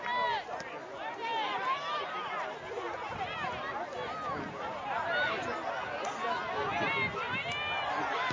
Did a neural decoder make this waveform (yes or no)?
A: no